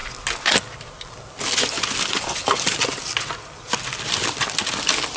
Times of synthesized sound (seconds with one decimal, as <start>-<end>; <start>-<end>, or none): none